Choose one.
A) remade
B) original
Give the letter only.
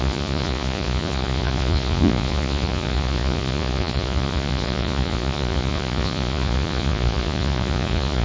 A